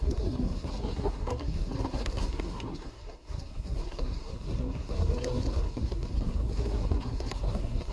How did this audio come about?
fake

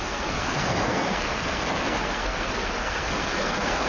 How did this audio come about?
fake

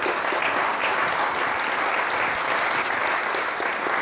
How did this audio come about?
real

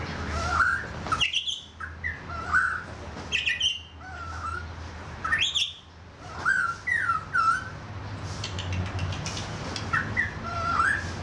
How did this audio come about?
real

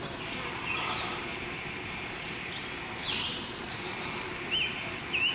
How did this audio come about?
real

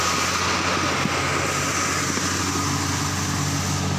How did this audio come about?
real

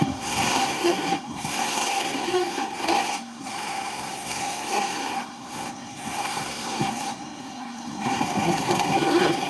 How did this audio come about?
fake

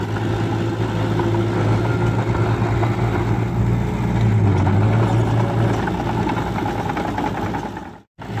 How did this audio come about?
real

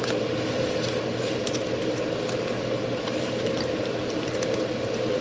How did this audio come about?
real